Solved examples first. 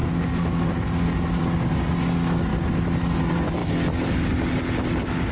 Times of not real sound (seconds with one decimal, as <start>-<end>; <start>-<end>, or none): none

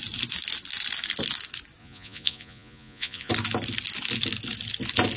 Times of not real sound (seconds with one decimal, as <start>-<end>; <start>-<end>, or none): 1.8-3.3

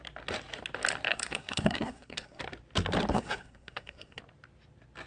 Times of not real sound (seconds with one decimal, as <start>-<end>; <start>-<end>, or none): 1.1-2.4; 3.1-4.2

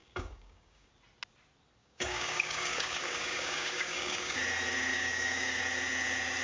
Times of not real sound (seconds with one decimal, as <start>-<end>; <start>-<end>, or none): 0.0-0.9; 1.8-4.4; 4.9-5.6